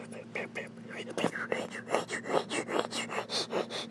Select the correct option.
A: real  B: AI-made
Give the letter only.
A